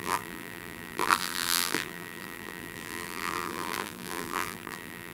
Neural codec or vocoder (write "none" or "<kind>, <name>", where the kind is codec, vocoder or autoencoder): vocoder, BigVGAN v2